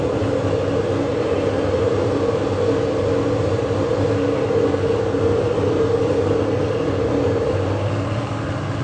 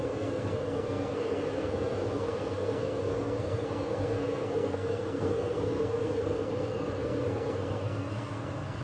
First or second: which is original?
first